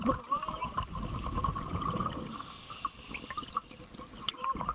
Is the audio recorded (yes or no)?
yes